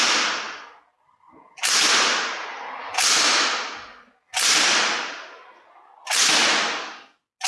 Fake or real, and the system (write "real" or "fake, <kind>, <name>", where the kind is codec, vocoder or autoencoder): real